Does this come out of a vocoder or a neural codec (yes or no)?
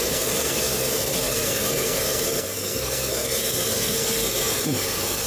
yes